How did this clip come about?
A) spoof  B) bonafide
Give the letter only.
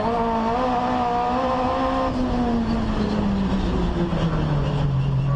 B